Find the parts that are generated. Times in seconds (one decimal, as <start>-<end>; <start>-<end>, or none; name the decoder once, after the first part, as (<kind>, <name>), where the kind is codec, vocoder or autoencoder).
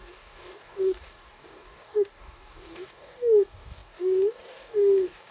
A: 0.0-5.3 (codec, DAC)